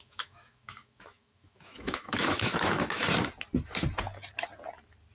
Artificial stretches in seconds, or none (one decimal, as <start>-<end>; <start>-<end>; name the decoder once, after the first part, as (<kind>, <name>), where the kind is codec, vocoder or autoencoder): 0.0-3.1 (autoencoder, DAC-VAE)